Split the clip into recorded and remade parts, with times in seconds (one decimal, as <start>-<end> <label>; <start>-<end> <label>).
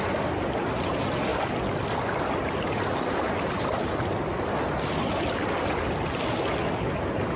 0.0-7.4 recorded